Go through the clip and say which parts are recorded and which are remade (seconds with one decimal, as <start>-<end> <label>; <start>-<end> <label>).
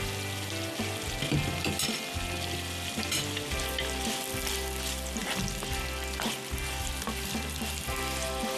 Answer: 0.0-8.6 recorded